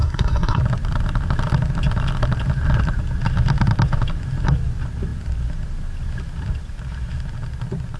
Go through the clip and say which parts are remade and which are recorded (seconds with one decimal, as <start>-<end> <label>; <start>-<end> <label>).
0.0-0.6 remade; 0.6-8.0 recorded